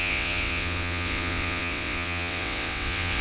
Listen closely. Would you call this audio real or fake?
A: fake